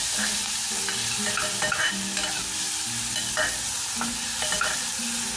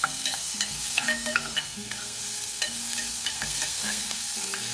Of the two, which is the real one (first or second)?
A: first